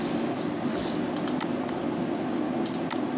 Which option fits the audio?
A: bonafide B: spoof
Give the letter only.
A